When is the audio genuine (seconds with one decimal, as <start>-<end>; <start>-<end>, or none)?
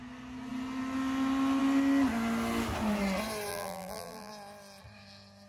0.0-3.5; 4.3-5.5